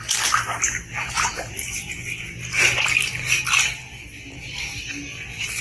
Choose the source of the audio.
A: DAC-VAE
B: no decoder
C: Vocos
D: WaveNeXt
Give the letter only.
B